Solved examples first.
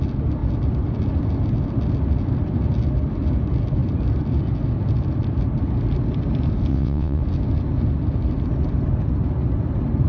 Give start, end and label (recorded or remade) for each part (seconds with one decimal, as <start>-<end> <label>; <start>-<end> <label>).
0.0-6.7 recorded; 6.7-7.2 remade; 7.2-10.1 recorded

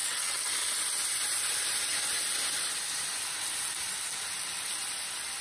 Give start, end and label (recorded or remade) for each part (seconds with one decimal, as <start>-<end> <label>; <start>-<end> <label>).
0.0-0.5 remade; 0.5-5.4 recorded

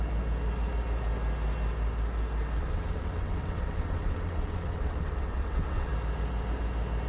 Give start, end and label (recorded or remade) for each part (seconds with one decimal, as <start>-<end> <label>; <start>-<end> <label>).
0.0-2.6 recorded; 2.6-5.9 remade; 5.9-7.1 recorded

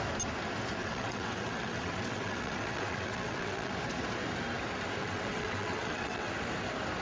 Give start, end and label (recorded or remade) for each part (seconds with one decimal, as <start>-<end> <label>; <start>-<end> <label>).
0.0-0.8 recorded; 0.8-3.7 remade; 3.7-5.0 recorded; 5.0-6.3 remade; 6.3-7.0 recorded